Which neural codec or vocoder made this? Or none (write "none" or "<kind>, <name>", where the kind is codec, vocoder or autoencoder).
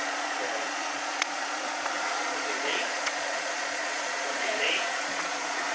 vocoder, Vocos